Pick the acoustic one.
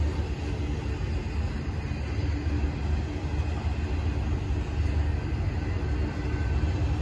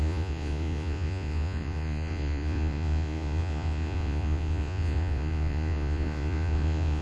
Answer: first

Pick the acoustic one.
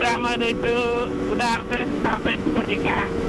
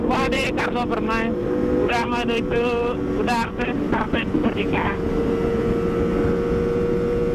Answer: second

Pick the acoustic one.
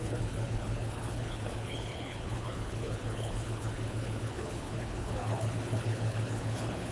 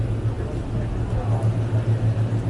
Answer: second